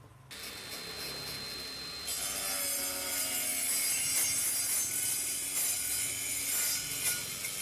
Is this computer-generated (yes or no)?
no